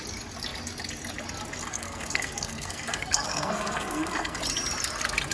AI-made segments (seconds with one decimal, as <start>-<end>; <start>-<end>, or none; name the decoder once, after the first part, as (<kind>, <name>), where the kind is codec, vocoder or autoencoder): 1.7-4.4 (codec, SNAC)